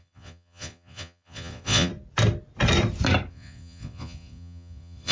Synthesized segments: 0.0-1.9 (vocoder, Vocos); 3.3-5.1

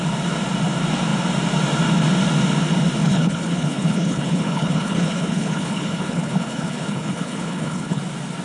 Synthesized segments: 3.0-8.0 (codec, HILCodec)